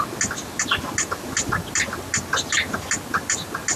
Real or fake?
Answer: real